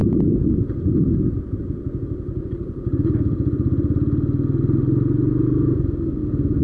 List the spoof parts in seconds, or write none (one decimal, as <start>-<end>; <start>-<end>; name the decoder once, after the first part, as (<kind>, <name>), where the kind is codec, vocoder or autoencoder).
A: none